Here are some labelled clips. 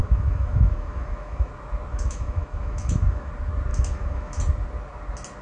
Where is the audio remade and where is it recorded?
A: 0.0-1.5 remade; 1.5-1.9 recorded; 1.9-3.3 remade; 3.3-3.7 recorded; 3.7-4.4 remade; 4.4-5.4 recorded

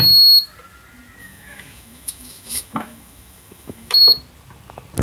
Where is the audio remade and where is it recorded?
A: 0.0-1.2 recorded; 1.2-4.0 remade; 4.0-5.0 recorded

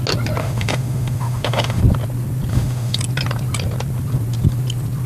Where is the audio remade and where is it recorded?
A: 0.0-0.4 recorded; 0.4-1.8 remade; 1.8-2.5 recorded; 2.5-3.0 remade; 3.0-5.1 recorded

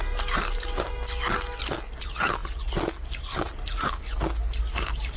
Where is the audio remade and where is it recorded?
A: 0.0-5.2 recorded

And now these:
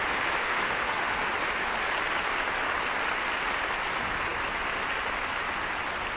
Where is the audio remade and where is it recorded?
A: 0.0-0.4 recorded; 0.4-1.2 remade; 1.2-6.2 recorded